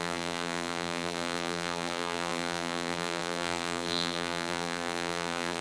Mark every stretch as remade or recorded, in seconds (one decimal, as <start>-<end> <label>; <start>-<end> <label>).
0.0-5.6 remade